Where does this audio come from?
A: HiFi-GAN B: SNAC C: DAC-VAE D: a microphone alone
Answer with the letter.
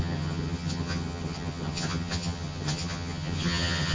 A